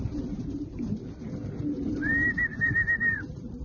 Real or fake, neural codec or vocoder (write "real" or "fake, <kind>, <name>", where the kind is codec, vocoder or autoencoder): fake, vocoder, BigVGAN v2